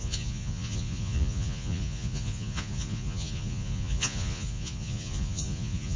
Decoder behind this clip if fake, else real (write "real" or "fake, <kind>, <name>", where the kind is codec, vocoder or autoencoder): fake, vocoder, Vocos